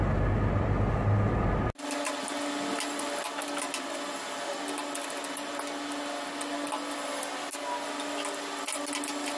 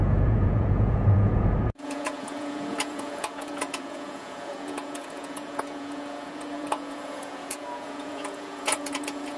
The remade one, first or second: second